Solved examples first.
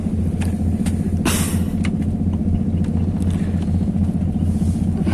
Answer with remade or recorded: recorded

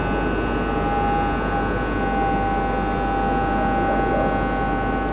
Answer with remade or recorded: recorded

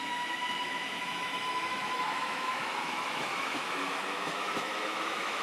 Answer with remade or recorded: remade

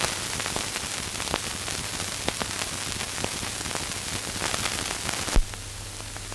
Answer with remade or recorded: recorded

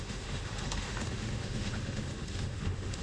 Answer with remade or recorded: remade